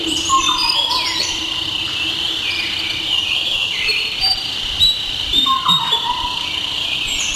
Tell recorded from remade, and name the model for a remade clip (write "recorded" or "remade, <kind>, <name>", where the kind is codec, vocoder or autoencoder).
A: remade, vocoder, BigVGAN v2